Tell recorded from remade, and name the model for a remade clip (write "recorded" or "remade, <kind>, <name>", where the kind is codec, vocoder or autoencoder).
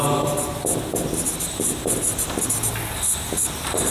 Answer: recorded